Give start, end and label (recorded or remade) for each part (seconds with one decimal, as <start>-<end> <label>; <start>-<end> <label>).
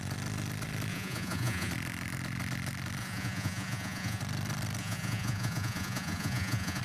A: 0.0-0.9 recorded; 0.9-1.7 remade; 1.7-3.0 recorded; 3.0-4.2 remade; 4.2-4.8 recorded; 4.8-6.8 remade